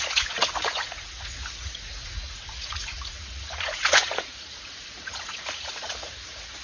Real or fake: fake